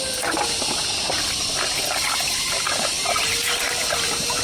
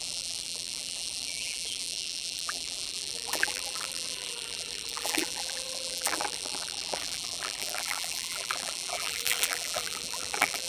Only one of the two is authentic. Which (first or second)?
first